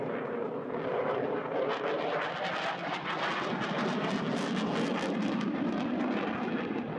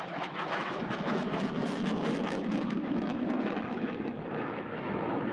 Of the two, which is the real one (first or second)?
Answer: first